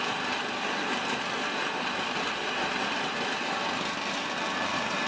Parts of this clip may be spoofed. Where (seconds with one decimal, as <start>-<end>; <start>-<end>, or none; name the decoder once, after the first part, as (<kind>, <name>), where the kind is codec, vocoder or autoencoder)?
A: none